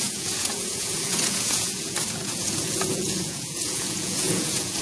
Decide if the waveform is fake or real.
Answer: fake